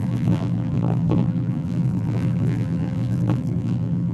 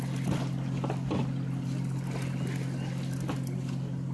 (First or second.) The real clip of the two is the second